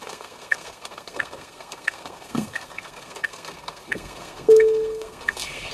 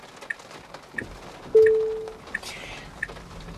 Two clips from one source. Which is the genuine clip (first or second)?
second